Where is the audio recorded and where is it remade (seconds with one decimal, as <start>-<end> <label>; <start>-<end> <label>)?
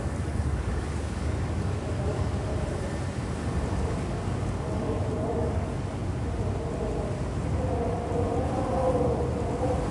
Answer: 0.0-2.5 remade; 2.5-3.9 recorded; 3.9-6.0 remade; 6.0-9.9 recorded